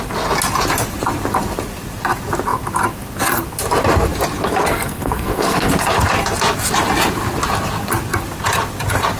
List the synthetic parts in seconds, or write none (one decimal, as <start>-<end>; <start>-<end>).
4.7-5.7

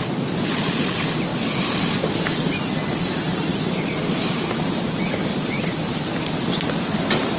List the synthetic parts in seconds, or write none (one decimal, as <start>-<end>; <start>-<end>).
5.3-5.8

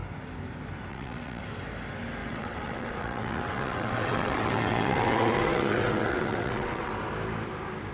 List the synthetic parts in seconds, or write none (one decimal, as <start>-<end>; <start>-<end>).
0.9-1.4; 2.2-6.9

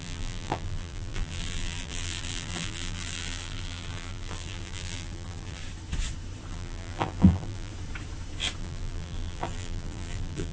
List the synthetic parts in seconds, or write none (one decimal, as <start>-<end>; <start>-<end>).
0.0-5.6; 6.5-7.7; 8.6-10.5